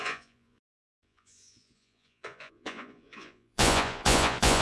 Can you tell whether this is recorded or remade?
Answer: remade